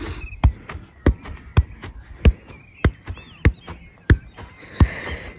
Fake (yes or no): no